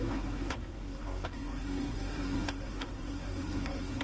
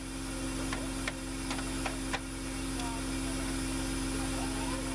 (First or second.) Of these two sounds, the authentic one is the second